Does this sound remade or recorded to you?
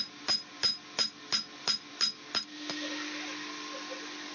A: recorded